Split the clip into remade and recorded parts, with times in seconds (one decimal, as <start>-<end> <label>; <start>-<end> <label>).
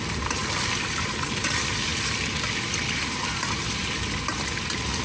0.0-5.0 recorded